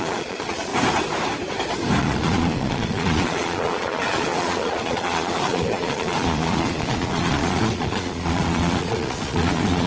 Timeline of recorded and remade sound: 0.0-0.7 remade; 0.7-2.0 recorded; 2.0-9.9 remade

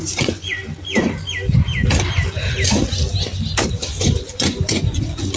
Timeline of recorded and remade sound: 0.0-0.6 remade; 0.6-3.8 recorded; 3.8-5.4 remade

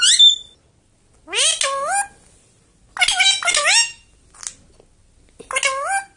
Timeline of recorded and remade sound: 0.0-6.2 recorded

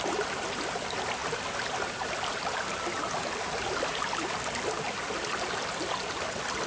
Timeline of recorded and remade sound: 0.0-6.7 recorded

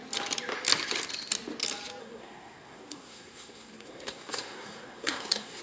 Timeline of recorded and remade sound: 0.0-2.0 recorded; 2.0-5.6 remade

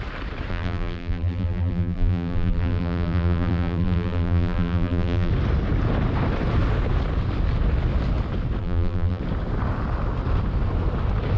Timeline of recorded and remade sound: 0.0-0.5 recorded; 0.5-5.3 remade; 5.3-8.6 recorded; 8.6-9.2 remade; 9.2-11.4 recorded

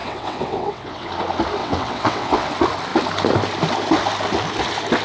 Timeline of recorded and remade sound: 0.0-1.1 remade; 1.1-1.6 recorded; 1.6-2.5 remade; 2.5-5.0 recorded

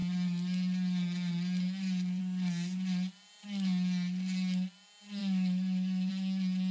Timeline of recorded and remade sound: 0.0-5.2 recorded; 5.2-6.1 remade; 6.1-6.7 recorded